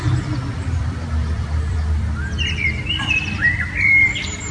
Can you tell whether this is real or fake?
fake